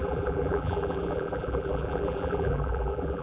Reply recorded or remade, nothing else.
remade